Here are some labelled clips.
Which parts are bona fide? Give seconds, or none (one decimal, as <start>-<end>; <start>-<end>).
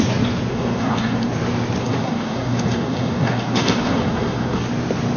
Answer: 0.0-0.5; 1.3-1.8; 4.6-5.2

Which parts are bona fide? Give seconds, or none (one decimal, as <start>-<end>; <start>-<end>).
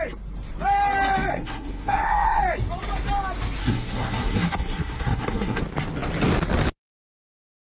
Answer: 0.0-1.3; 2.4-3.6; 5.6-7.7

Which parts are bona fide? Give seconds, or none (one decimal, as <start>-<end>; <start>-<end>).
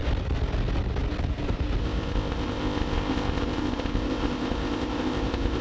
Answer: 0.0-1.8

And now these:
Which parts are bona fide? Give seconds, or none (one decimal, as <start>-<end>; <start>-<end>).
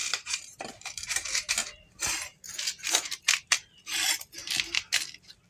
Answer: 1.5-5.5